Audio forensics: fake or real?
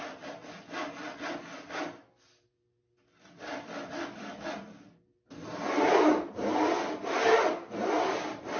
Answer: real